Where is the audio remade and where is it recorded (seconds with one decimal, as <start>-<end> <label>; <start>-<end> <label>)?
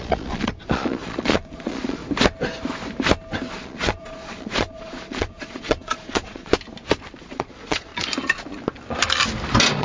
0.0-2.0 remade; 2.0-3.5 recorded; 3.5-6.5 remade; 6.5-7.2 recorded; 7.2-7.9 remade; 7.9-9.8 recorded